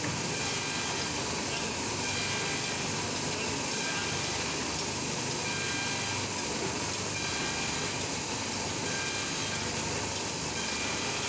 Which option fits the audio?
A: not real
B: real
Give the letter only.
B